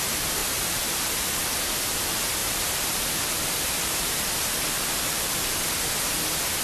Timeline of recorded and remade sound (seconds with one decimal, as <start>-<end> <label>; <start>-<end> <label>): 0.0-0.4 recorded; 0.4-1.8 remade; 1.8-2.4 recorded; 2.4-5.9 remade; 5.9-6.6 recorded